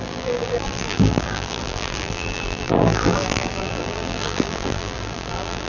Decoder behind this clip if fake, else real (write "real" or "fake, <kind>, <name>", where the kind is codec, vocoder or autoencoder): fake, vocoder, BigVGAN v2